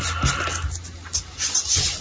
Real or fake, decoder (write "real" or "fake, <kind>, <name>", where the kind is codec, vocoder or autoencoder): real